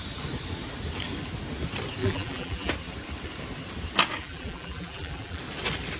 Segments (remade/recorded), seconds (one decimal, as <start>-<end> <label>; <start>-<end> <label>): 0.0-2.0 recorded; 2.0-2.7 remade; 2.7-4.2 recorded; 4.2-5.4 remade; 5.4-6.0 recorded